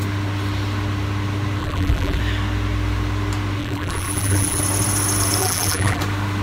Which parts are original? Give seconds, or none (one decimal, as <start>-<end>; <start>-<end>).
0.0-1.6; 2.2-3.6; 4.6-5.4; 6.0-6.4